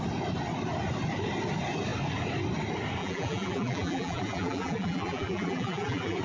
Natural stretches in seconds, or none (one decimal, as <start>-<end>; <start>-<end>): 0.0-3.0